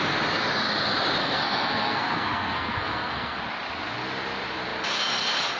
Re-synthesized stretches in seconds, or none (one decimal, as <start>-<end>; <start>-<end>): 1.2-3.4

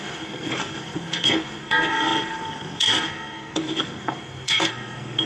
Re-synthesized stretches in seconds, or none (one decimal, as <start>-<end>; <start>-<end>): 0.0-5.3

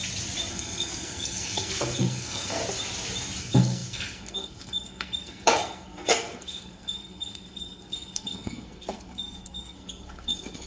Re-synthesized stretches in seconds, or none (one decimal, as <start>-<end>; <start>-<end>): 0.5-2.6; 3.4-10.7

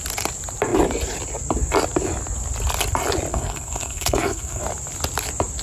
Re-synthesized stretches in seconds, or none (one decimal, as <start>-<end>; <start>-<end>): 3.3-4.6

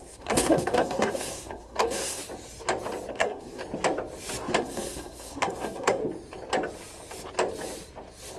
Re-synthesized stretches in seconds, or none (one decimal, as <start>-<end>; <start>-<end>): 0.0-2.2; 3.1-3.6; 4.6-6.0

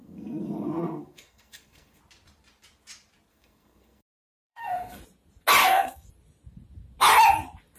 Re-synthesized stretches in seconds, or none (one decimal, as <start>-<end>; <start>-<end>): 0.0-2.0; 3.3-5.0; 5.6-6.1

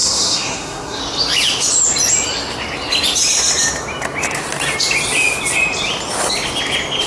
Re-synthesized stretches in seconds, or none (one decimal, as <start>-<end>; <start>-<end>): 0.0-1.0